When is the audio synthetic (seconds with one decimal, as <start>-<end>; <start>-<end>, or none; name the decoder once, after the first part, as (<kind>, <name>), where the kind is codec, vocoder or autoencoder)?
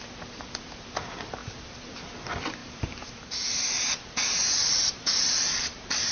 1.4-2.0 (vocoder, BigVGAN v2); 2.6-3.3; 4.6-6.1